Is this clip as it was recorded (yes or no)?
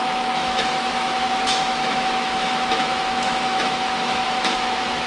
no